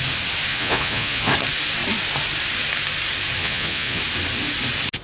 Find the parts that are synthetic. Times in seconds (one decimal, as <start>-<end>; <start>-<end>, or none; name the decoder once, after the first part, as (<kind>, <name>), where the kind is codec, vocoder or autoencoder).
0.5-1.3 (vocoder, Vocos); 3.4-4.0

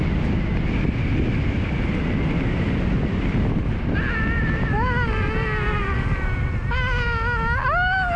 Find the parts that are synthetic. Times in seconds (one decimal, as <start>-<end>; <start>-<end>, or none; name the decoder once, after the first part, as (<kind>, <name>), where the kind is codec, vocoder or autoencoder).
none

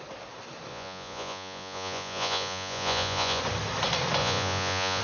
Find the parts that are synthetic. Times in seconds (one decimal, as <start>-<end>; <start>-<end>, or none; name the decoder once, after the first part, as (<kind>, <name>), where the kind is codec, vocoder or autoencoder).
0.7-3.4 (vocoder, Vocos); 4.2-5.0

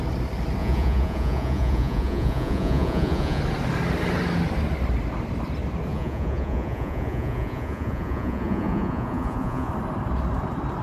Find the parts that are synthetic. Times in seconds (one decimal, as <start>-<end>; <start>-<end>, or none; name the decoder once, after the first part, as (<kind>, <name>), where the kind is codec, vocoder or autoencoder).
0.6-3.4 (vocoder, Vocos); 5.9-9.7